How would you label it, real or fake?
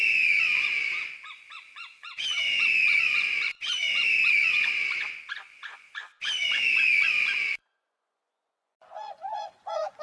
fake